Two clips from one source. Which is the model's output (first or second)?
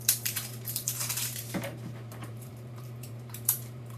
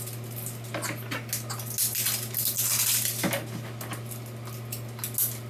first